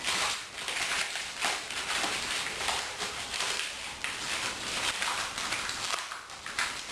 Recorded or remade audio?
remade